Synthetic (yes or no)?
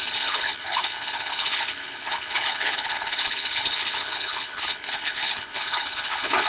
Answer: yes